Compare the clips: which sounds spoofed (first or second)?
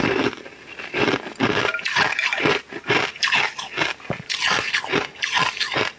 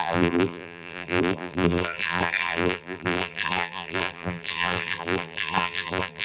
second